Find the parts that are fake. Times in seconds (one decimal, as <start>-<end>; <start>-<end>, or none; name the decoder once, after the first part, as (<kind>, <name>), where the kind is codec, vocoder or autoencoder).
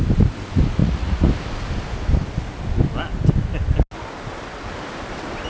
0.8-1.3 (vocoder, Vocos)